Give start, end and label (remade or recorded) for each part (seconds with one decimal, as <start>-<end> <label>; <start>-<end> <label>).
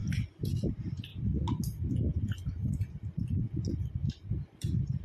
0.0-0.7 recorded; 0.7-1.1 remade; 1.1-4.1 recorded; 4.1-5.0 remade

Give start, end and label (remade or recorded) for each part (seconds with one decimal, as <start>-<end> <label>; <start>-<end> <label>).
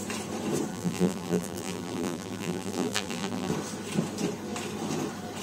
0.0-0.7 recorded; 0.7-3.5 remade; 3.5-5.4 recorded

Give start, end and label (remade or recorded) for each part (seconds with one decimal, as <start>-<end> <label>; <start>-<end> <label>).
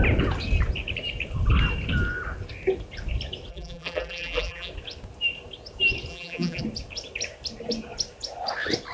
0.0-3.5 recorded; 3.5-4.7 remade; 4.7-6.1 recorded; 6.1-6.6 remade; 6.6-8.9 recorded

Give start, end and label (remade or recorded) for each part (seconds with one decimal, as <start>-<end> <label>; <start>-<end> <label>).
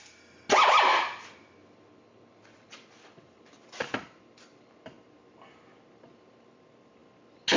0.0-0.9 recorded; 0.9-4.8 remade; 4.8-7.6 recorded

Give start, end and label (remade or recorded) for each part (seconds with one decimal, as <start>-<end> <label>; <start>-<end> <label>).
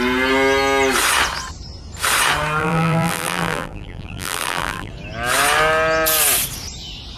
0.0-2.6 recorded; 2.6-4.9 remade; 4.9-7.2 recorded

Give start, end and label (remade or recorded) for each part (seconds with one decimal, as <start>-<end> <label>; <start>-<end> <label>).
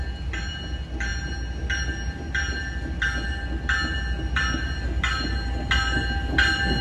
0.0-6.8 recorded